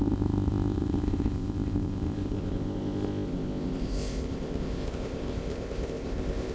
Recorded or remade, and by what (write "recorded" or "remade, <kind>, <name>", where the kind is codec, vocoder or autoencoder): remade, codec, ZipCodec